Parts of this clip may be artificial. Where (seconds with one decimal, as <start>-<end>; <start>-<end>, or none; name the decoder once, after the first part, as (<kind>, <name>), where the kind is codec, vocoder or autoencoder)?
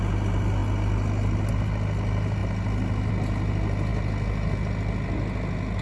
none